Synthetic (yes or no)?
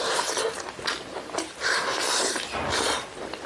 no